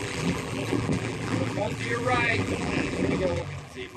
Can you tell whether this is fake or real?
fake